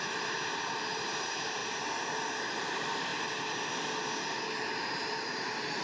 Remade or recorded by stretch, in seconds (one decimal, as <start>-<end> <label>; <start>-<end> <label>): 0.0-1.6 remade; 1.6-2.5 recorded; 2.5-3.1 remade; 3.1-5.0 recorded; 5.0-5.8 remade